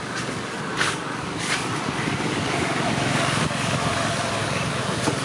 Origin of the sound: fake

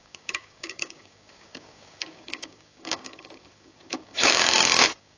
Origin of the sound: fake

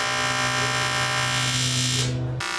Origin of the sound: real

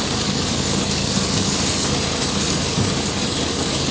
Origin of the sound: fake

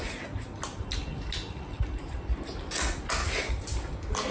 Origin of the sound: real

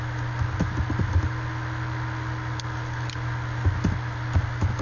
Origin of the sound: real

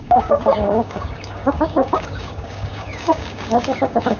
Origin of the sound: fake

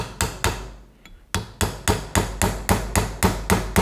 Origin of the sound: real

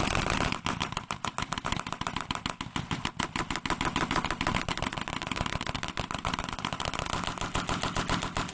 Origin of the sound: real